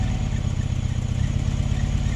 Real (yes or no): yes